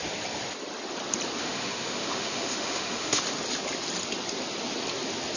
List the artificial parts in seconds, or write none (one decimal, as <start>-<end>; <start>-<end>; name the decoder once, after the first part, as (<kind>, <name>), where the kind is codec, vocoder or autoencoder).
1.4-3.2 (autoencoder, DAC-VAE)